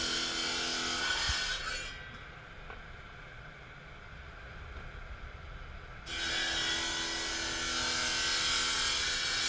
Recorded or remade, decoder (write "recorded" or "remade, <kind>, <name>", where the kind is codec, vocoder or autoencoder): recorded